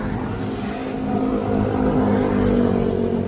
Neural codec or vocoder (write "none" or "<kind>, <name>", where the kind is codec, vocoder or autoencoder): none